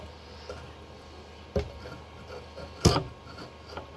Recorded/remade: recorded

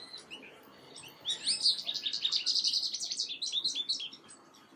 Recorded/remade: recorded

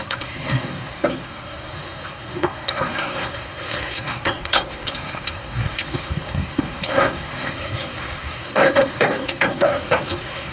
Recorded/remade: remade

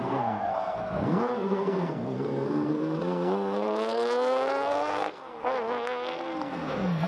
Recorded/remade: remade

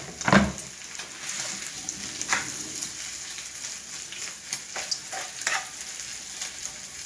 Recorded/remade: recorded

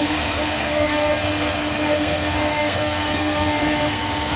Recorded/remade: remade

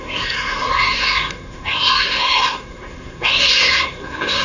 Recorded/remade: remade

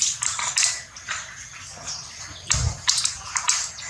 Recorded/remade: recorded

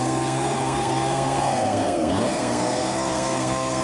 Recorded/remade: remade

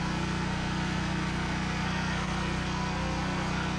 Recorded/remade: remade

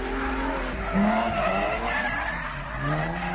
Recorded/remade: recorded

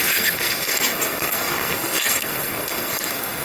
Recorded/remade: remade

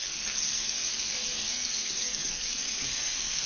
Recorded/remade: remade